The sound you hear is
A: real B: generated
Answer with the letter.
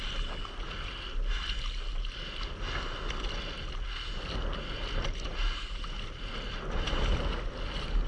A